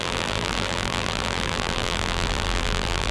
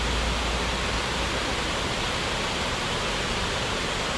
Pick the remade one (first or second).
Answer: first